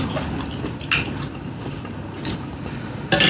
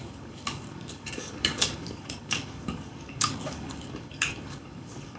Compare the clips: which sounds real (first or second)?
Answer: first